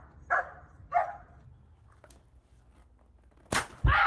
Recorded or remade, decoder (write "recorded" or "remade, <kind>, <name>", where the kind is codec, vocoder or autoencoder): recorded